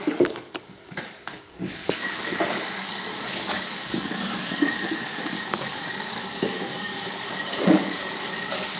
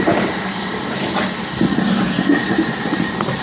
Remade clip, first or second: first